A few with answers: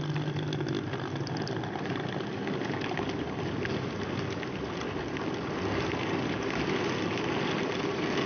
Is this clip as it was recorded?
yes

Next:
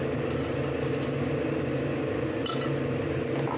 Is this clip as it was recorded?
yes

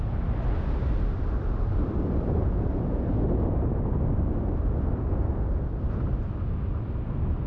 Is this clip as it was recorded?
yes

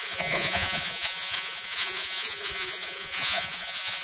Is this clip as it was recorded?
no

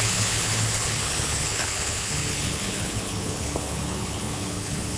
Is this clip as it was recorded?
no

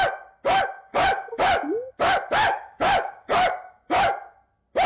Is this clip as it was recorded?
yes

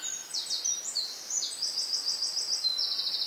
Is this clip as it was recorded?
no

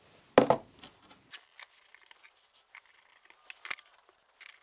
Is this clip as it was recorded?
yes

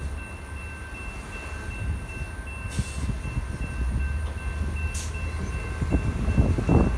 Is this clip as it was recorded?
yes